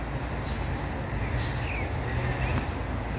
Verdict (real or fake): real